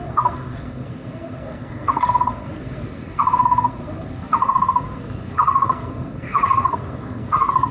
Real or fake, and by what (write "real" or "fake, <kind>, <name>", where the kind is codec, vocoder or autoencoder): fake, codec, SNAC